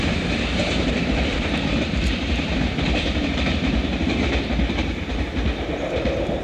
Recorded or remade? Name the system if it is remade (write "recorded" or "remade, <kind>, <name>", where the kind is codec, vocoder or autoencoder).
remade, vocoder, BigVGAN v2